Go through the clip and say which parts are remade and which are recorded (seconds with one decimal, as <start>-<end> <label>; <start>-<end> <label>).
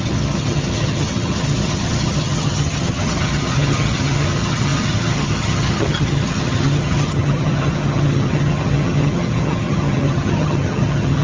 0.0-11.2 remade